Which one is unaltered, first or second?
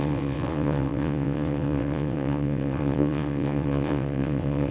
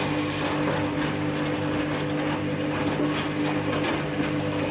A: second